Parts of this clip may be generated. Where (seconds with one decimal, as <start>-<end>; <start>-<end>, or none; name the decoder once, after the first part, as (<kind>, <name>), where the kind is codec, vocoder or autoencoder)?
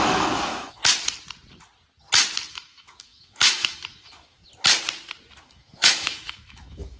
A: 0.0-0.8 (autoencoder, DAC-VAE); 2.5-4.4; 5.4-7.0